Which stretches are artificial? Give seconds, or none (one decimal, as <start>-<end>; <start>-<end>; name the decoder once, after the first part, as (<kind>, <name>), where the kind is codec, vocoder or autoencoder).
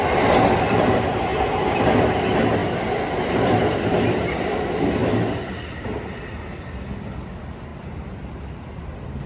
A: 7.7-9.3 (vocoder, BigVGAN v2)